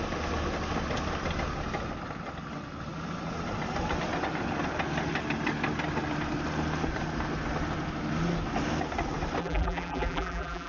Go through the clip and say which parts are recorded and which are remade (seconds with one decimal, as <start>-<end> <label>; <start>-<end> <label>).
0.0-9.4 recorded; 9.4-10.7 remade